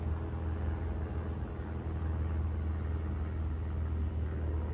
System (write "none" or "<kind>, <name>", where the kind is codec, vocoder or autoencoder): none